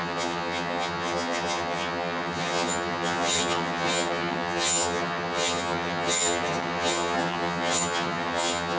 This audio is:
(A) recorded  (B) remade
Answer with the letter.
B